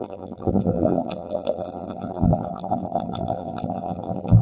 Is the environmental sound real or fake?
fake